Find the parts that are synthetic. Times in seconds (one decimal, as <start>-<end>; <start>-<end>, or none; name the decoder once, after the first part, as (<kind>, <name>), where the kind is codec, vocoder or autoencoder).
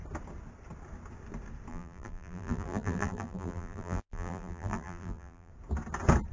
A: 1.7-5.5 (vocoder, BigVGAN v2)